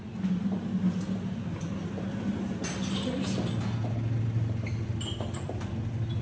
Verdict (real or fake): real